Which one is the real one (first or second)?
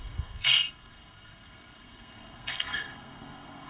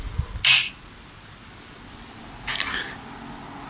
second